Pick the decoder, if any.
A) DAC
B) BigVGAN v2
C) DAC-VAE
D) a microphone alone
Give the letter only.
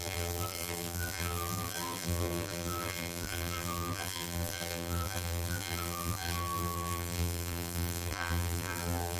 B